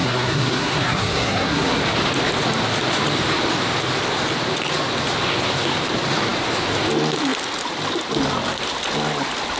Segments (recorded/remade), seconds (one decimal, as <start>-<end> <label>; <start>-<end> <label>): 0.0-1.8 remade; 1.8-9.6 recorded